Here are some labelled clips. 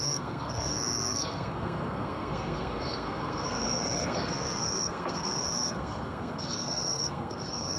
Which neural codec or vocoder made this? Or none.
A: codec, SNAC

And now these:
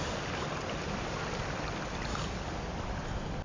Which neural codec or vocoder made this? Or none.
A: none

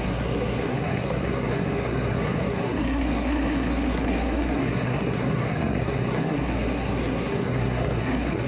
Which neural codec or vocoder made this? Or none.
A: codec, SNAC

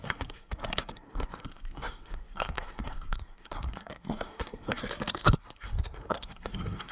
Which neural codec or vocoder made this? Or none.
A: codec, SNAC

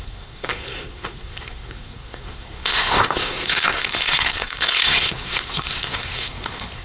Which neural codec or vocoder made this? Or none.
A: codec, SNAC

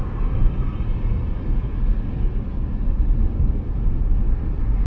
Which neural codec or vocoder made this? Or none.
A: none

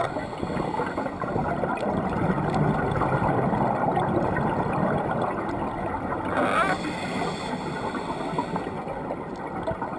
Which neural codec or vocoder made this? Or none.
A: none